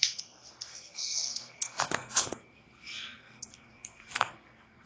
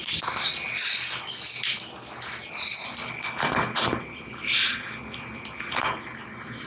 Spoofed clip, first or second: first